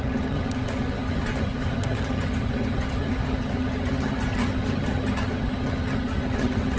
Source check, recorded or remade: remade